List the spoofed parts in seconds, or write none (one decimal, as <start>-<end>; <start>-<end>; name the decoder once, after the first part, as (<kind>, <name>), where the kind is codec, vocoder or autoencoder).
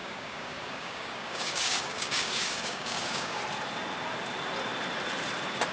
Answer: 0.0-3.4 (codec, DAC)